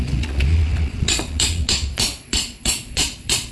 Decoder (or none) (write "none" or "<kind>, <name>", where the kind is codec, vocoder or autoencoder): vocoder, Vocos